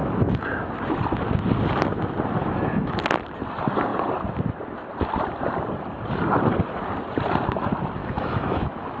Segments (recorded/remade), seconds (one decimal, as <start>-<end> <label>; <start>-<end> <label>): 0.0-0.7 remade; 0.7-2.4 recorded; 2.4-2.9 remade; 2.9-8.0 recorded; 8.0-9.0 remade